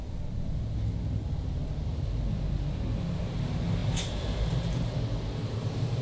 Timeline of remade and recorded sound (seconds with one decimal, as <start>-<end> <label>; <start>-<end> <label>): 0.0-3.8 recorded; 3.8-5.0 remade; 5.0-6.0 recorded